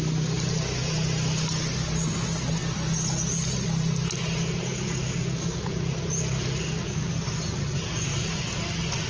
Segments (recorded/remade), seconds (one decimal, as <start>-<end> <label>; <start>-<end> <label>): 0.0-9.1 recorded